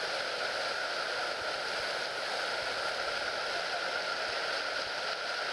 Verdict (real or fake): real